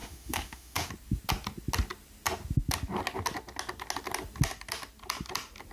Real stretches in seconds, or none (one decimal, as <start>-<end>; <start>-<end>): 0.9-5.7